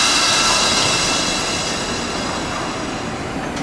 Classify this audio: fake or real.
real